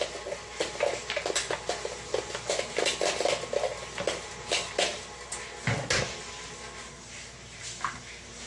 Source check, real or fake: real